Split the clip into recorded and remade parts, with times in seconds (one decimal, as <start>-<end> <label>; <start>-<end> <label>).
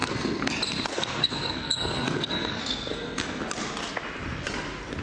0.0-0.5 remade; 0.5-0.9 recorded; 0.9-3.4 remade; 3.4-5.0 recorded